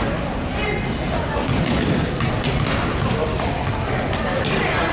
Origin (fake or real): real